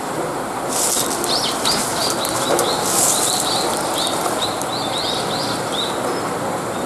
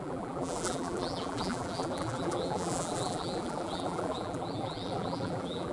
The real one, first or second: first